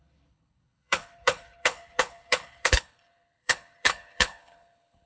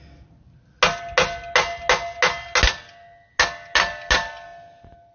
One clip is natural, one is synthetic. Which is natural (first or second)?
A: second